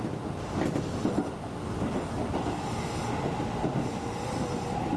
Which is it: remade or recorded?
recorded